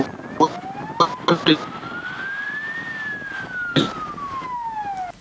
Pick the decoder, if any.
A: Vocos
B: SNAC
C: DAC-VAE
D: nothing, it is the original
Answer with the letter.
D